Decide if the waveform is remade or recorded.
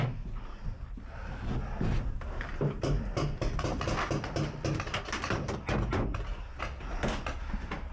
recorded